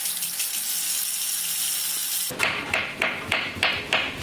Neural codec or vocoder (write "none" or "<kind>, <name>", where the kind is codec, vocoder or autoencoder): none